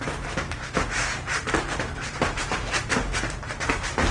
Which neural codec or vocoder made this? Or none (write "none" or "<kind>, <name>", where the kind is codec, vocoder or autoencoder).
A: none